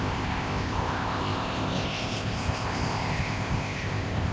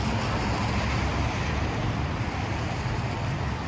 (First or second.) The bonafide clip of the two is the second